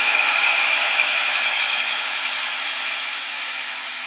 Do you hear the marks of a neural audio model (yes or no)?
yes